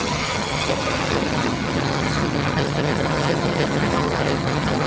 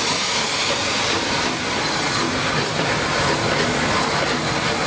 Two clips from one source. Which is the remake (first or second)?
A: first